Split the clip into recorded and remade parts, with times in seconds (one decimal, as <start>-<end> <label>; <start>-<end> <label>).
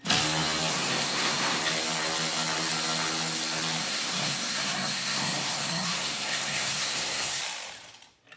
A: 0.0-0.7 recorded; 0.7-1.6 remade; 1.6-3.8 recorded; 3.8-7.4 remade; 7.4-8.4 recorded